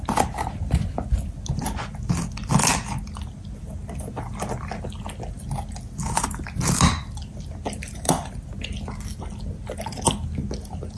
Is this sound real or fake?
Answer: real